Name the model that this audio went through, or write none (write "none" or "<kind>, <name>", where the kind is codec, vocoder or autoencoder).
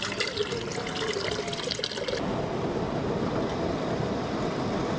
none